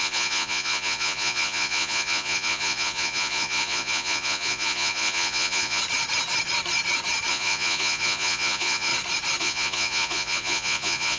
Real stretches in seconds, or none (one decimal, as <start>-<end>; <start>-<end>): 5.8-7.3; 8.9-9.4